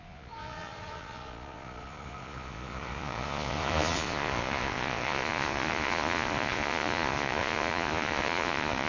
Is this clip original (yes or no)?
no